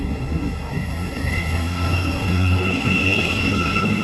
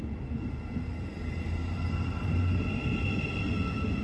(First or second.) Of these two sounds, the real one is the second